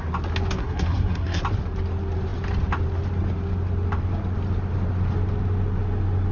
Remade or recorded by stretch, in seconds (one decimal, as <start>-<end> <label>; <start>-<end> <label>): 0.0-0.6 recorded; 0.6-1.4 remade; 1.4-6.3 recorded